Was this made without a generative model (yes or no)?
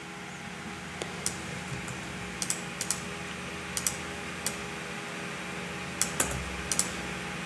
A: yes